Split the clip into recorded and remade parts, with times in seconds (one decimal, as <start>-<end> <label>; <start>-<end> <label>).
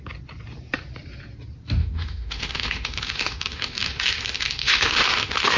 0.0-1.8 recorded; 1.8-5.6 remade